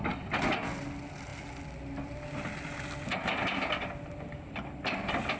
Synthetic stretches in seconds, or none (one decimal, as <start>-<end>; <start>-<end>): none

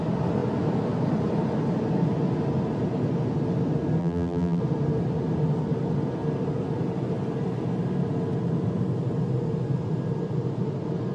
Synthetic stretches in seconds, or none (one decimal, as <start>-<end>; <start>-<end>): 4.0-4.6

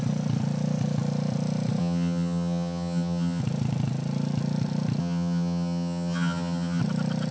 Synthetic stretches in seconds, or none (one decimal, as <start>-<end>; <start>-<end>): 1.8-3.4; 5.0-6.8